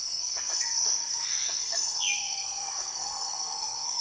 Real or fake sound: fake